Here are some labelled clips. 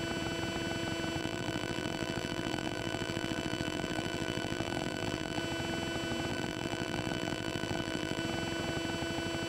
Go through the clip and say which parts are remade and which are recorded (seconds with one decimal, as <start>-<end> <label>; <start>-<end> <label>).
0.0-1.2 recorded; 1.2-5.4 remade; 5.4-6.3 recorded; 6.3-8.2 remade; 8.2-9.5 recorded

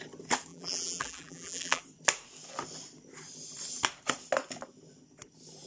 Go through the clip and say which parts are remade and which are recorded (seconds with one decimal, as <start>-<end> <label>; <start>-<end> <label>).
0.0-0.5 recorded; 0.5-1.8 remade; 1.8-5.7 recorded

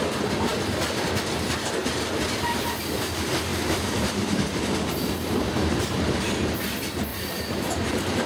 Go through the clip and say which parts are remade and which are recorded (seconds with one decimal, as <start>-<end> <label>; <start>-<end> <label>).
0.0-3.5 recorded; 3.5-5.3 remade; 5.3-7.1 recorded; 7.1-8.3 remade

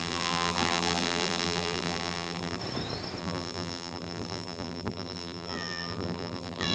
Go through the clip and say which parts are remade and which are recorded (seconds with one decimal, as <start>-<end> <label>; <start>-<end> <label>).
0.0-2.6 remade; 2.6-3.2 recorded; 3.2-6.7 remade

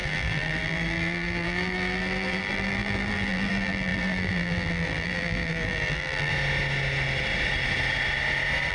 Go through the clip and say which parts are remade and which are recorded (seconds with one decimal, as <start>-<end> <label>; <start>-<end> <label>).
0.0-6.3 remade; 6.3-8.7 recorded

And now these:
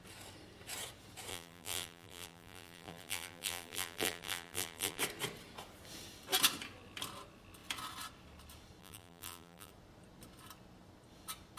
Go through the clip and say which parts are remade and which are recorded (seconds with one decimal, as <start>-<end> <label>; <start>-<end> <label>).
0.0-1.3 recorded; 1.3-5.0 remade; 5.0-8.8 recorded; 8.8-9.7 remade; 9.7-11.6 recorded

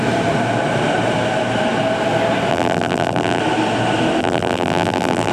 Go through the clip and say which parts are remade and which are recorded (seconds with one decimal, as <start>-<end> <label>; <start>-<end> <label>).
0.0-2.5 recorded; 2.5-3.4 remade; 3.4-4.2 recorded; 4.2-5.3 remade